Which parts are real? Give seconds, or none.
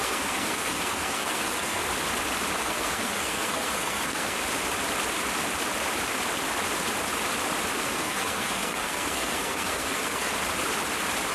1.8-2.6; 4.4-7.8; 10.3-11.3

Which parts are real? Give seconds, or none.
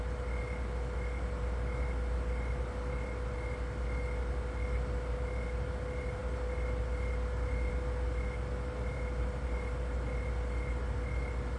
0.0-11.6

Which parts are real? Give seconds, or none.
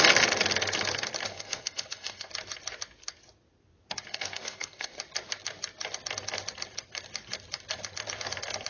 0.0-1.3; 2.3-4.1; 5.0-8.7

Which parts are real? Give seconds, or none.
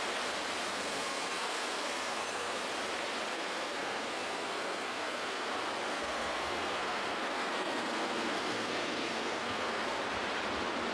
0.0-0.7; 2.6-3.3; 5.5-5.9; 10.0-10.9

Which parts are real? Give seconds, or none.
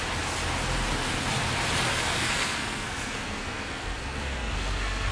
0.0-1.9